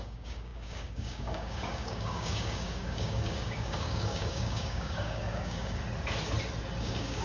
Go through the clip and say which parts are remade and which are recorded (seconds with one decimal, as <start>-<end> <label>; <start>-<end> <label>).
0.0-5.8 remade; 5.8-6.8 recorded; 6.8-7.2 remade